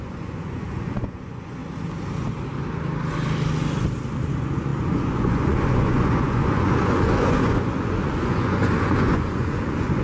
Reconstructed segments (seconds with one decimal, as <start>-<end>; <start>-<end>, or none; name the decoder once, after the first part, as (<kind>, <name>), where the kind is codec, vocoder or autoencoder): 0.0-1.6 (vocoder, Vocos); 4.3-10.0